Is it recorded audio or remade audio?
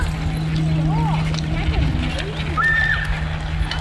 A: recorded